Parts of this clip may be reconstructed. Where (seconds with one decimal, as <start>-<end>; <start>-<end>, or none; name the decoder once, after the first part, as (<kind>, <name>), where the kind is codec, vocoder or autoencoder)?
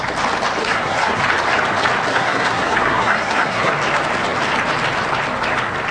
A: 0.6-1.2 (codec, SNAC); 2.1-3.7